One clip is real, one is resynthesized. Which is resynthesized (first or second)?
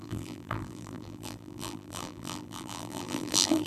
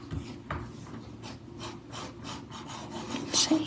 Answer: first